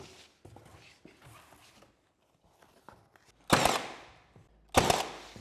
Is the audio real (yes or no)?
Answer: yes